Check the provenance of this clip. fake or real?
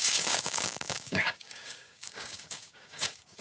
fake